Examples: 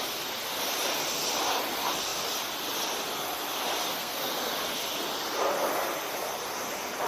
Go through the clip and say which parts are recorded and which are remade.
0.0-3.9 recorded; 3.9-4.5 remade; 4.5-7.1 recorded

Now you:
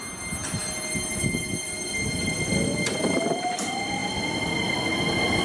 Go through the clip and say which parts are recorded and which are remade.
0.0-5.4 recorded

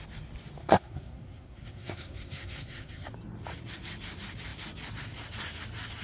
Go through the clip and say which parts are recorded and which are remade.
0.0-0.6 recorded; 0.6-3.1 remade; 3.1-6.0 recorded

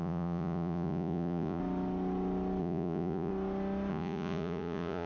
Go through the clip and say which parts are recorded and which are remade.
0.0-1.6 remade; 1.6-2.6 recorded; 2.6-3.3 remade; 3.3-3.9 recorded; 3.9-5.1 remade

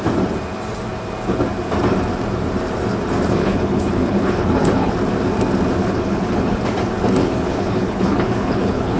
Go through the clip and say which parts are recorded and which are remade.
0.0-3.4 recorded; 3.4-4.9 remade; 4.9-5.8 recorded; 5.8-6.6 remade; 6.6-7.2 recorded; 7.2-9.0 remade

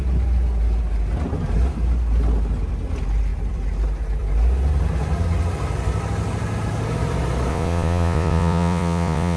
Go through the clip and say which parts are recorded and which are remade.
0.0-7.5 recorded; 7.5-9.4 remade

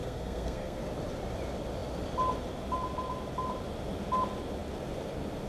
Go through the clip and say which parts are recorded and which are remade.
0.0-0.8 remade; 0.8-5.5 recorded

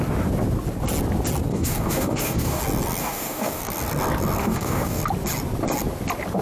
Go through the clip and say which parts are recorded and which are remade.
0.0-1.5 recorded; 1.5-2.6 remade; 2.6-3.0 recorded; 3.0-3.6 remade; 3.6-4.4 recorded; 4.4-5.0 remade; 5.0-6.4 recorded